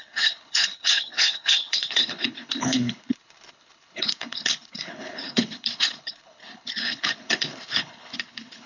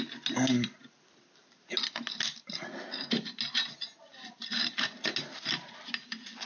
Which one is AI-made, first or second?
first